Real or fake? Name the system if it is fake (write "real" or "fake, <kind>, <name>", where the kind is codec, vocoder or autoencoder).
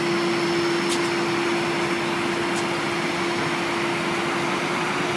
real